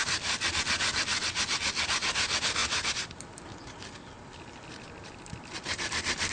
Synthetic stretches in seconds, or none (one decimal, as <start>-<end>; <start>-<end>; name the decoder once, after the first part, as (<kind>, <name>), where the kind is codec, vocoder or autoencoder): none